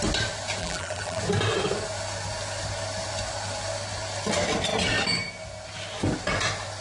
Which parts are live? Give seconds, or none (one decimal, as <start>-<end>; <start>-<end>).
0.0-0.6; 1.2-6.8